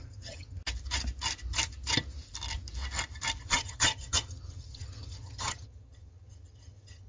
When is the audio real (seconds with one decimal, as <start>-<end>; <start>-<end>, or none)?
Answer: 0.6-3.4